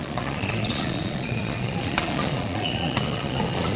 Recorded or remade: remade